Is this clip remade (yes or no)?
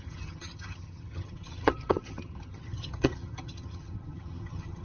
yes